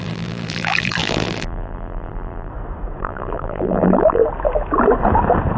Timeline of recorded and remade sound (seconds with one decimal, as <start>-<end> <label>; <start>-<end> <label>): 0.0-2.5 remade; 2.5-3.0 recorded; 3.0-4.2 remade; 4.2-5.6 recorded